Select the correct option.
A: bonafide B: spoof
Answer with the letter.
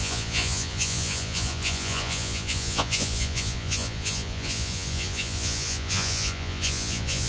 B